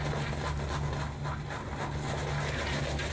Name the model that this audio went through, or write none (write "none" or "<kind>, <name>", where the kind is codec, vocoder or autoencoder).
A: none